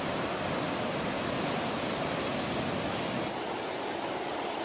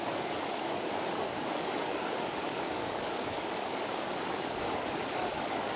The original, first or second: first